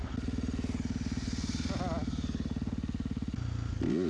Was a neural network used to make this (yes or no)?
no